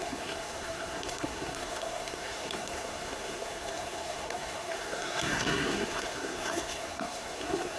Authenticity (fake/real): fake